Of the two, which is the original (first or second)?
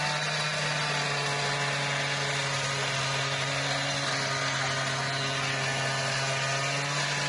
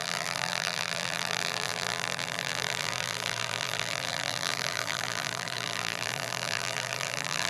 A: first